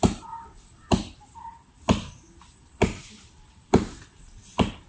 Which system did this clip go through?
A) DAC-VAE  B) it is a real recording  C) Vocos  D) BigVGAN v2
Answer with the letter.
D